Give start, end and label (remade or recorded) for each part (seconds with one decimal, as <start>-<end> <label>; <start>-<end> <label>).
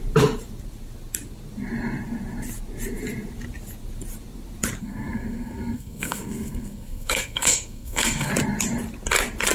0.0-4.8 recorded; 4.8-8.3 remade; 8.3-9.5 recorded